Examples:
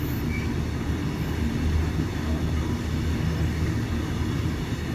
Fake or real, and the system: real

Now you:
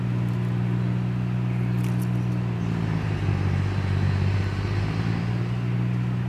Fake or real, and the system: real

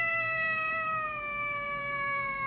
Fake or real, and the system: fake, vocoder, BigVGAN v2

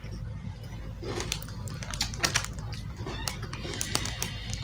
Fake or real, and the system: real